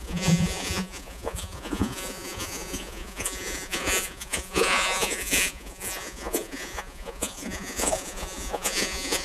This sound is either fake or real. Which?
fake